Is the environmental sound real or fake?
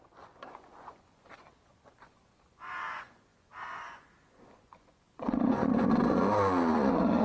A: fake